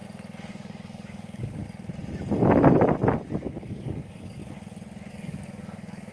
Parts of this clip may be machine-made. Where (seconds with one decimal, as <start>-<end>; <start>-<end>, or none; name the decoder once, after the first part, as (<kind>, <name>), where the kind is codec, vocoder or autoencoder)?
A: 0.5-1.6 (codec, DAC); 3.4-4.4; 5.1-6.1